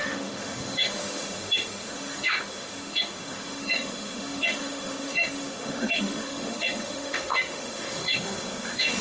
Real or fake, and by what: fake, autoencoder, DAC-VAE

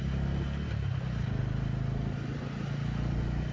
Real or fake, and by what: real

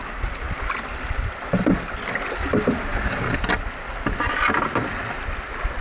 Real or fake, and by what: real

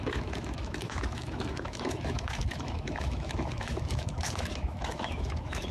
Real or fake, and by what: fake, autoencoder, DAC-VAE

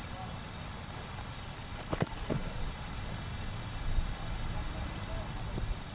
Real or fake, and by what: real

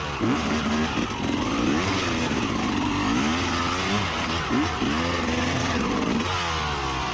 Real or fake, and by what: real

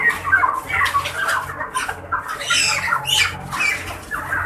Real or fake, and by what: real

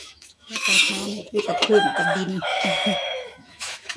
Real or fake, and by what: fake, autoencoder, DAC-VAE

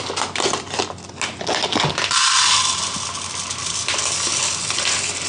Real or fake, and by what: real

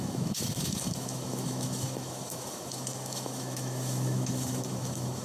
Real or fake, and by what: fake, autoencoder, DAC-VAE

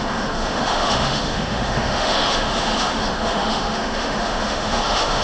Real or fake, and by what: fake, autoencoder, DAC-VAE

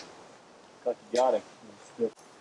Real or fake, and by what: real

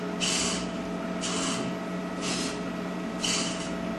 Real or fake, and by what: real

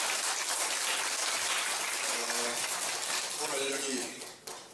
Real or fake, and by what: real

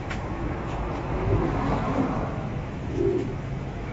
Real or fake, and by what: fake, autoencoder, DAC-VAE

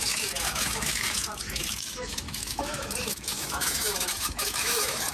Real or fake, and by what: fake, autoencoder, DAC-VAE